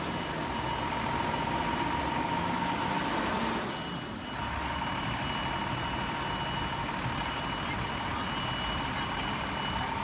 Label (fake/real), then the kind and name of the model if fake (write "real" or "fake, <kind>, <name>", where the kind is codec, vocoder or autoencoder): real